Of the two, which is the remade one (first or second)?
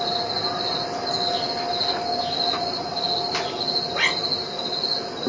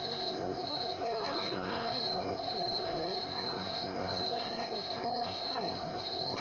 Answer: second